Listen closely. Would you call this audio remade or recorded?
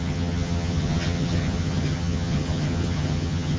remade